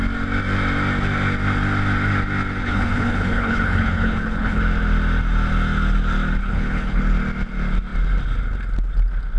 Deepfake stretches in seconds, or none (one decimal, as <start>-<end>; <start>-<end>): 2.6-4.6; 6.4-7.0